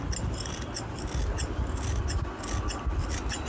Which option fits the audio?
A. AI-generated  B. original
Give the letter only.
B